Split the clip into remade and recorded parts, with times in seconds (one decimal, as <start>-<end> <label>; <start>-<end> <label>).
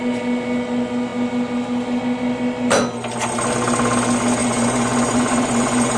0.0-4.4 recorded; 4.4-6.0 remade